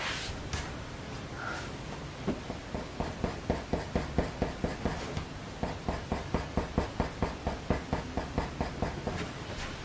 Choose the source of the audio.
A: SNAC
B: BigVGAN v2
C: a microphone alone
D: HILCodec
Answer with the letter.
C